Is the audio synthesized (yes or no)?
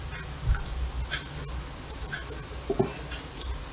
no